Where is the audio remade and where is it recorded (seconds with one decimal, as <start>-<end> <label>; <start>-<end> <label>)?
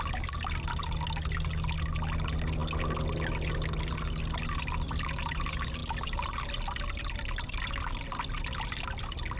0.0-9.4 recorded